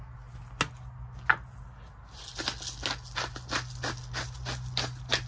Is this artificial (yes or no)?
no